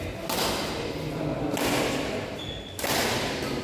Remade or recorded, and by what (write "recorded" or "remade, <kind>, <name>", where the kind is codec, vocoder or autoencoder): recorded